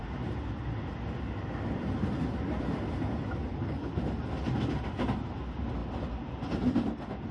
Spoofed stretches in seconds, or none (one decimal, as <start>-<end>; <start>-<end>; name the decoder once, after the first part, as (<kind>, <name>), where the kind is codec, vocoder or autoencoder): 3.5-4.0 (codec, HILCodec)